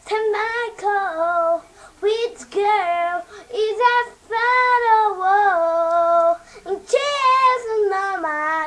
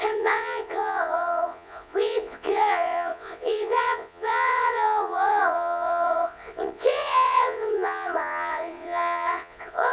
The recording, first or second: first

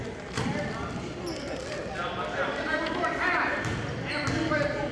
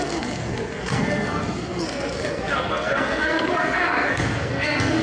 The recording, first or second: first